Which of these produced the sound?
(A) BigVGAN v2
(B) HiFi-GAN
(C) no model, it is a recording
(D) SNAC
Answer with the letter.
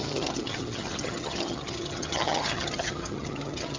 B